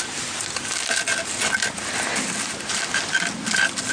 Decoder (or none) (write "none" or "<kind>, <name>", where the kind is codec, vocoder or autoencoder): none